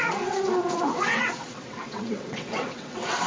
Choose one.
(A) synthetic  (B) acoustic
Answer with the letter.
A